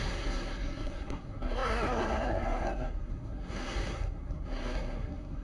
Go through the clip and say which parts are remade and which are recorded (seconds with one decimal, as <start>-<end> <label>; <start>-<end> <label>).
0.0-5.4 remade